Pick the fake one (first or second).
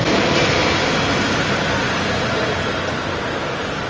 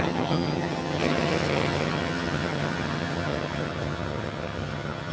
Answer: second